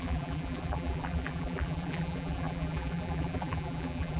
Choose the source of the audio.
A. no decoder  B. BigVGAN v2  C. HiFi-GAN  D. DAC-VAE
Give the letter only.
B